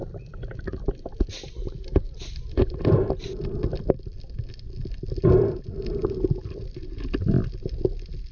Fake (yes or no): no